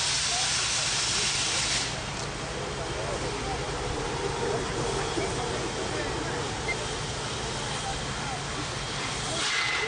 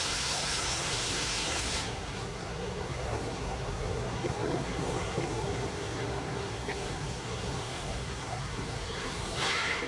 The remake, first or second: second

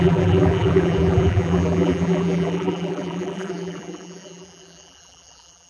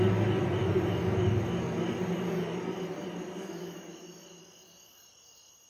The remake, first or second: first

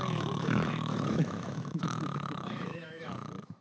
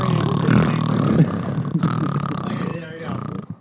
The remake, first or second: first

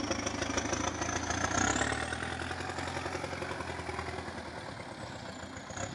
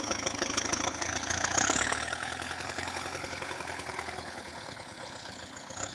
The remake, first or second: second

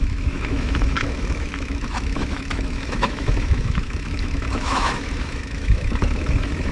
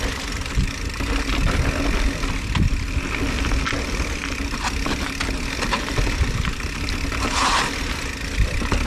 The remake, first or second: first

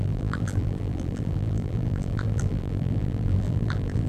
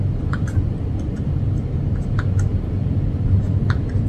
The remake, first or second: first